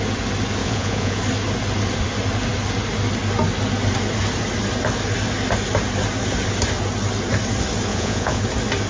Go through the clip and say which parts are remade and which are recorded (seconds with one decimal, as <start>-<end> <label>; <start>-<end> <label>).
0.0-0.6 recorded; 0.6-1.2 remade; 1.2-7.9 recorded; 7.9-8.4 remade; 8.4-8.9 recorded